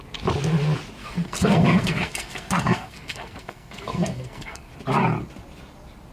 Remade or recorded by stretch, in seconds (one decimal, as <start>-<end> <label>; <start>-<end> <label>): 0.0-1.0 recorded; 1.0-4.7 remade; 4.7-6.1 recorded